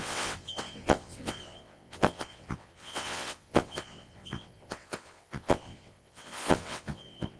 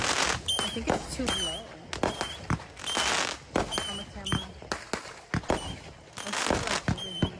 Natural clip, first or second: second